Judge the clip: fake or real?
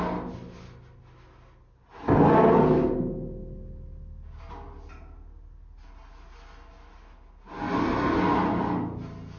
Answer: real